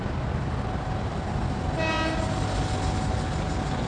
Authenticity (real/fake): real